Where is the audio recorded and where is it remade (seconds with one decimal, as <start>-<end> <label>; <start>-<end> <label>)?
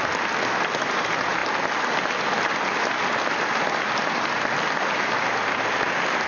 0.0-6.3 recorded